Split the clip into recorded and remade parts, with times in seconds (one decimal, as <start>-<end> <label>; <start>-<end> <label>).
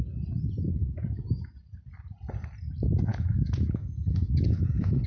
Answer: 0.0-0.8 recorded; 0.8-1.5 remade; 1.5-3.1 recorded; 3.1-5.1 remade